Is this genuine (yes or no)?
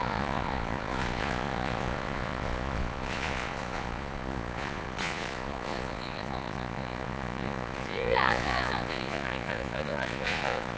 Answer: no